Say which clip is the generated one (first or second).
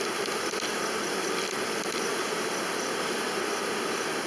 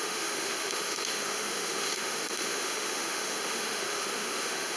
second